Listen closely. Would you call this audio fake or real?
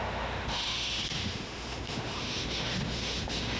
fake